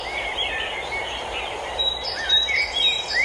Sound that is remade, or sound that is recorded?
remade